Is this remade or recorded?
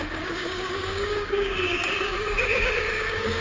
remade